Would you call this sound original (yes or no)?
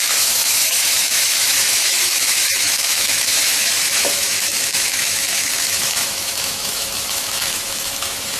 no